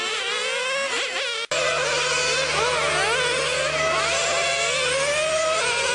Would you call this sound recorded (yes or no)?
yes